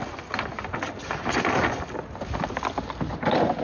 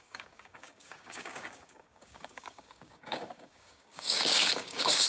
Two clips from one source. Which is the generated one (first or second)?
second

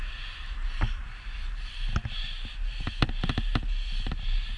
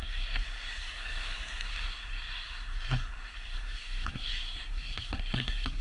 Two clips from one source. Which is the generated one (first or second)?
second